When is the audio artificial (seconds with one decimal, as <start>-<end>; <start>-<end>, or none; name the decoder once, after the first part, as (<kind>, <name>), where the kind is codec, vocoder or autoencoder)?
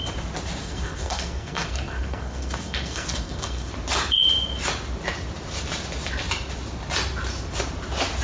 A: 0.6-3.7 (codec, SNAC)